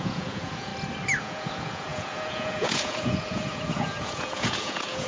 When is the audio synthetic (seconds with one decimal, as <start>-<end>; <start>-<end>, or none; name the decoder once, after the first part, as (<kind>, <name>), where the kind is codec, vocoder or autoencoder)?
0.0-0.7 (vocoder, Vocos); 1.2-5.1